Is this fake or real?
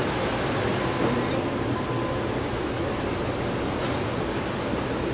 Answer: real